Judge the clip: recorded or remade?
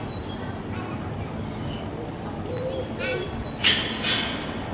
recorded